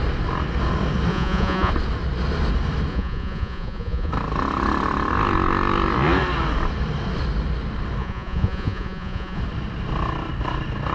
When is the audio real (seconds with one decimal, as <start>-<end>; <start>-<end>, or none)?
0.0-1.1; 1.7-2.9; 4.1-8.0; 9.4-10.9